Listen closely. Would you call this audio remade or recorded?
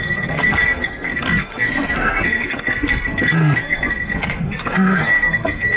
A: remade